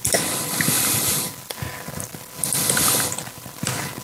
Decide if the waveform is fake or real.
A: real